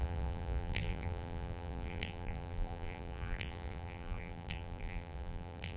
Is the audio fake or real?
fake